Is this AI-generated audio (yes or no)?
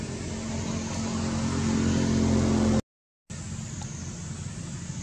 no